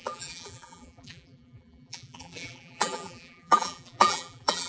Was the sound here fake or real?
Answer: fake